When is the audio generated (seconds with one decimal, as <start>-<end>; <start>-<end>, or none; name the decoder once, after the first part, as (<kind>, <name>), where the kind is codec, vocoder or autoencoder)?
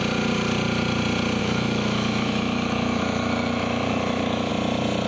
1.4-4.5 (autoencoder, DAC-VAE)